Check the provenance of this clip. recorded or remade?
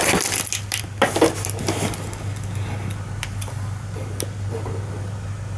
recorded